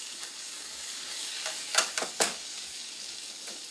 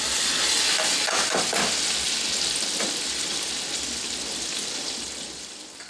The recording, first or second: second